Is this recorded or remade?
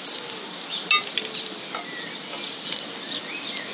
recorded